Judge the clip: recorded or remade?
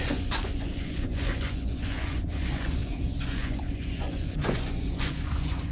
remade